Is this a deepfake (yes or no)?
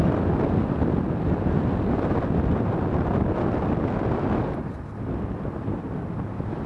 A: no